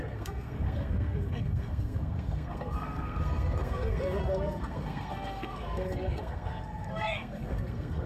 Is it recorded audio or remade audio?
remade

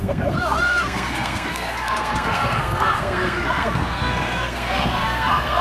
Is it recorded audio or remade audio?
remade